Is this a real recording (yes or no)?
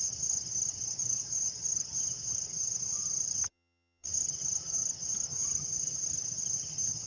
no